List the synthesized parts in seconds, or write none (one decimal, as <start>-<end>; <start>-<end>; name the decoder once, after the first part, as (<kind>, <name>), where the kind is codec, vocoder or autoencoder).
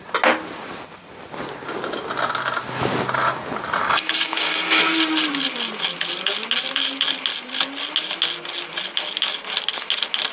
3.8-4.8 (codec, DAC)